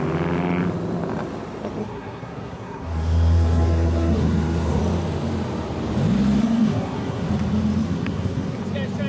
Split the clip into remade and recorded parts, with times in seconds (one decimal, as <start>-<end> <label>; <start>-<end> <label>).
0.0-1.8 recorded; 1.8-4.8 remade; 4.8-6.4 recorded; 6.4-7.3 remade; 7.3-7.8 recorded; 7.8-8.6 remade; 8.6-9.1 recorded

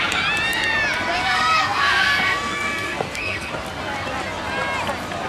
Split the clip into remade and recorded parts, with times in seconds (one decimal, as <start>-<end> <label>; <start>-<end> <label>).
0.0-1.2 recorded; 1.2-3.5 remade; 3.5-5.3 recorded

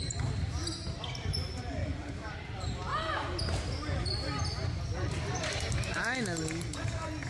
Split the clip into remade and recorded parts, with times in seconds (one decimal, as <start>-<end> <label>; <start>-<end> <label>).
0.0-7.3 recorded